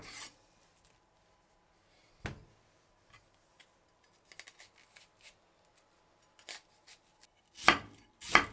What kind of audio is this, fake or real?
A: real